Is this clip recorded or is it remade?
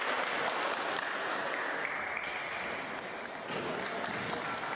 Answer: recorded